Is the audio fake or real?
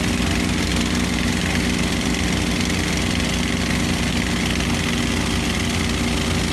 real